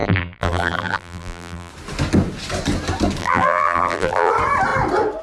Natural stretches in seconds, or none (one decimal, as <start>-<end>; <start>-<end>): 1.7-3.2; 4.3-5.2